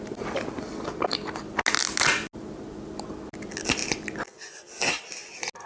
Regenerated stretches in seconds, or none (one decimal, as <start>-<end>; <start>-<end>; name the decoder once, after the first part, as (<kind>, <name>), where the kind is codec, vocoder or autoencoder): 3.8-5.0 (vocoder, BigVGAN v2)